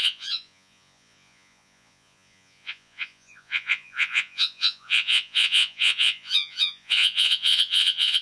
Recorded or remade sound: remade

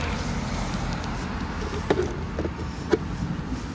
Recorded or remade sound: recorded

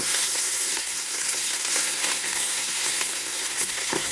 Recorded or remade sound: remade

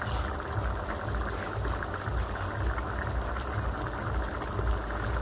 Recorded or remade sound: recorded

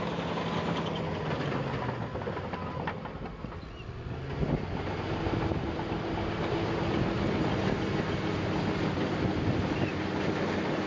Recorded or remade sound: recorded